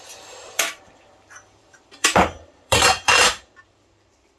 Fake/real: fake